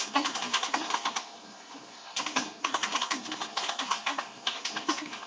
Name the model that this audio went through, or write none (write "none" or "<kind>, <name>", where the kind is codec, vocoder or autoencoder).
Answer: codec, SNAC